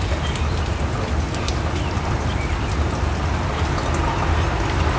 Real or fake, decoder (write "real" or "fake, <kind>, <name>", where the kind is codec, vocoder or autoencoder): real